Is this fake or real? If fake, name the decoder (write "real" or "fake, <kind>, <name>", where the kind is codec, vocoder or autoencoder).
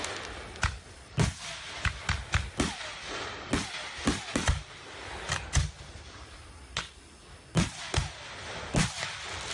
real